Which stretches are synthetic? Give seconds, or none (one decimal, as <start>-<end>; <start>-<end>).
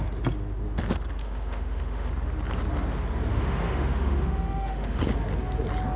1.2-2.1; 3.3-5.0